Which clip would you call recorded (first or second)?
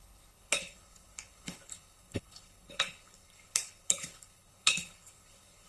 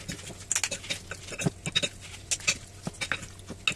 second